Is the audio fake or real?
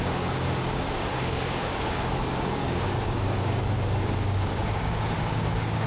fake